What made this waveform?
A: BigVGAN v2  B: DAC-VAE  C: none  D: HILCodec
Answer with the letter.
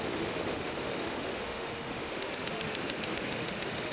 B